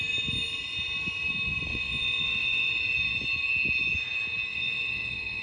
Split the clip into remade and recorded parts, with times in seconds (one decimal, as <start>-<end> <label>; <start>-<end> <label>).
0.0-1.7 recorded; 1.7-2.7 remade; 2.7-4.5 recorded; 4.5-5.4 remade